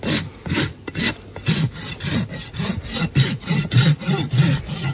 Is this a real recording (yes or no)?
yes